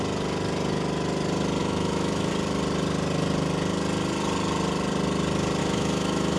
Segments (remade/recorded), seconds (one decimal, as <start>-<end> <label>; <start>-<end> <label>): 0.0-1.6 recorded; 1.6-2.3 remade; 2.3-5.6 recorded; 5.6-6.4 remade